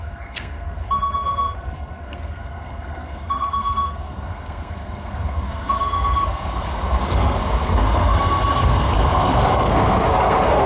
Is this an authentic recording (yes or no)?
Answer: no